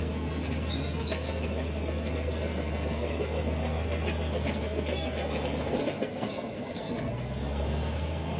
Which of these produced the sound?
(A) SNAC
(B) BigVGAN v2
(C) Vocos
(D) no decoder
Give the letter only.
A